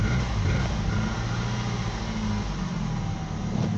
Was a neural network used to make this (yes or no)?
no